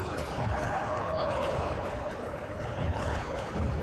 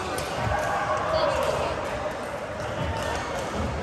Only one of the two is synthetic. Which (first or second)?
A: first